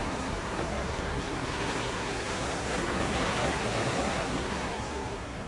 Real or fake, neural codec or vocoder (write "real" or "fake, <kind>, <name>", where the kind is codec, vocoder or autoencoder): fake, codec, SNAC